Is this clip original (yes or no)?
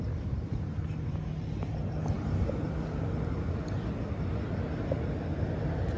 yes